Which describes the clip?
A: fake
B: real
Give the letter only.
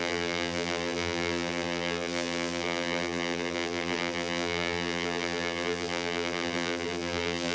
A